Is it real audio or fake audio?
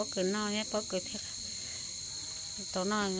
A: real